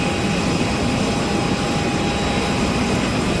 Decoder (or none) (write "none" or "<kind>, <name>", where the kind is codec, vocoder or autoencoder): none